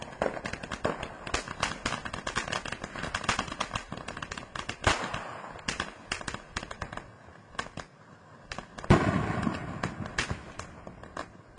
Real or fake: real